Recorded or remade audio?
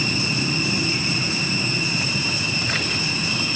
remade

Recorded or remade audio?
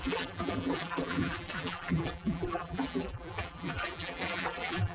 remade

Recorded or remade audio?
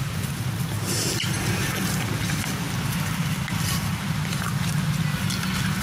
recorded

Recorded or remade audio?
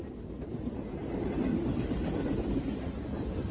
remade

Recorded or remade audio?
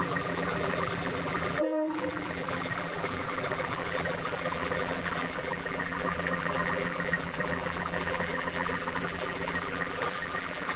remade